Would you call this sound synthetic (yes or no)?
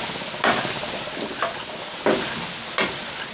no